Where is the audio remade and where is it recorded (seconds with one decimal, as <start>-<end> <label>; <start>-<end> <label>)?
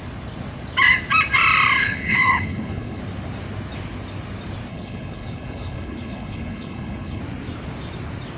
0.0-1.8 recorded; 1.8-3.0 remade; 3.0-4.7 recorded; 4.7-7.2 remade; 7.2-8.4 recorded